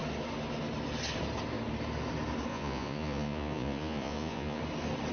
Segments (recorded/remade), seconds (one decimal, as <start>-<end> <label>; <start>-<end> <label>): 0.0-2.5 recorded; 2.5-4.6 remade; 4.6-5.1 recorded